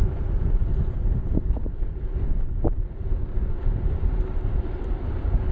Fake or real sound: real